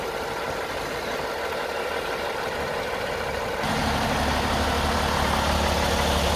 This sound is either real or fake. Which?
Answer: real